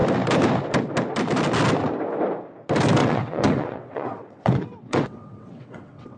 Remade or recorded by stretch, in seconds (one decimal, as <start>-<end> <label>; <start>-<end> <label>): 0.0-3.0 recorded; 3.0-6.2 remade